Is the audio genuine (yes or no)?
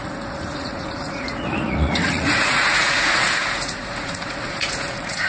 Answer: no